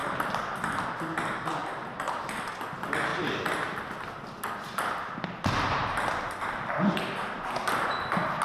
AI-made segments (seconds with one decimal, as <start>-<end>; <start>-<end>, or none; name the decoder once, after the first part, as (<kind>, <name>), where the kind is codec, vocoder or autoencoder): 0.0-0.9 (vocoder, BigVGAN v2); 5.8-6.8